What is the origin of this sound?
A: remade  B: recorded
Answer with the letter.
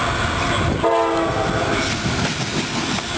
B